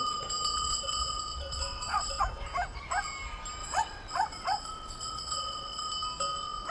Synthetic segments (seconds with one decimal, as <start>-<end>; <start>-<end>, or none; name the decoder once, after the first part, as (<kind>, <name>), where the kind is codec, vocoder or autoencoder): 0.5-2.2 (vocoder, WaveNeXt); 3.6-5.9